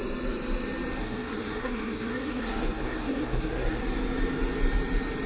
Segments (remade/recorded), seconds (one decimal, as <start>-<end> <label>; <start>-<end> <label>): 0.0-1.0 recorded; 1.0-3.8 remade; 3.8-5.3 recorded